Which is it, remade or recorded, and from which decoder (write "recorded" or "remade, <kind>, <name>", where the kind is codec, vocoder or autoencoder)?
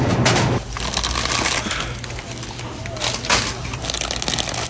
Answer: recorded